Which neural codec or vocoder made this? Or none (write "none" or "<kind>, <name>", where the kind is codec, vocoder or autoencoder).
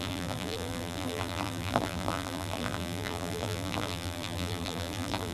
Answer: vocoder, BigVGAN v2